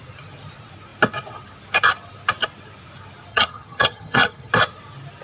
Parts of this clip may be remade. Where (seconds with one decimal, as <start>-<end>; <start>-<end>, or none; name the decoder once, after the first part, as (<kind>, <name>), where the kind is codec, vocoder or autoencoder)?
3.3-4.5 (vocoder, HiFi-GAN)